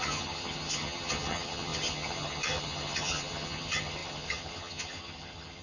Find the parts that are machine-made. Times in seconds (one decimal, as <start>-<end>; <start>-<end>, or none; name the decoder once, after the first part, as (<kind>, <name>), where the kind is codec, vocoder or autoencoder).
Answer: 0.0-5.6 (vocoder, HiFi-GAN)